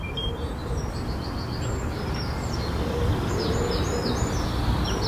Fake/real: real